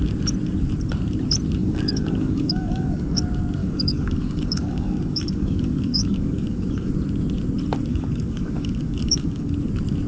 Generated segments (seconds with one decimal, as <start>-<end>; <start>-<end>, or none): 1.6-3.2; 3.6-6.9; 7.9-9.5

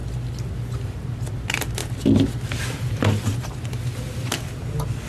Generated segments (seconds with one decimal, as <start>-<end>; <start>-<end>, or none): none

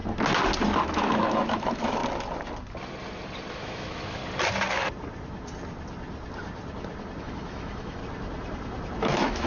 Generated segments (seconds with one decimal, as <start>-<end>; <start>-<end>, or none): 0.9-2.0; 3.5-4.2; 7.2-8.0; 9.0-9.5